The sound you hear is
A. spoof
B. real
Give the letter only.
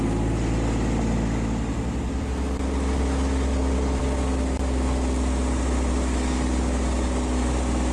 B